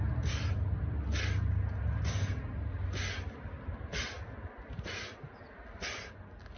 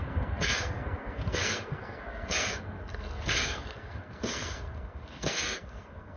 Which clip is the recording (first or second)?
first